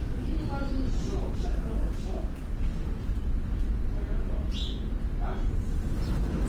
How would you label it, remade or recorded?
recorded